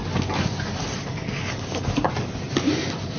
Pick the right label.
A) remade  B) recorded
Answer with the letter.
B